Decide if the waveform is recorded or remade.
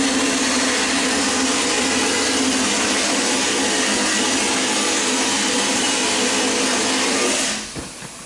recorded